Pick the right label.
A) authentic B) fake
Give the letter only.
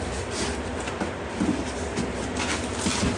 A